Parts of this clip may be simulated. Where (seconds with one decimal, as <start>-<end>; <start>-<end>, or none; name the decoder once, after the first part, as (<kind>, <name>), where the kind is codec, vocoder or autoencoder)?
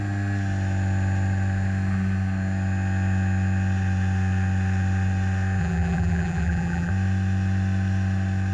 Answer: 5.6-6.9 (vocoder, BigVGAN v2)